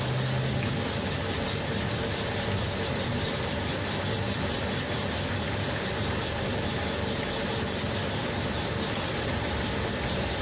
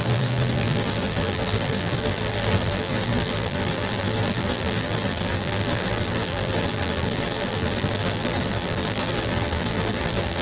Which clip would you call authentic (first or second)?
first